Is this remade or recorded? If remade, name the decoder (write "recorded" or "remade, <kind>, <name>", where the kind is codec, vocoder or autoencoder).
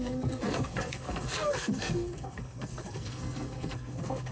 remade, codec, SNAC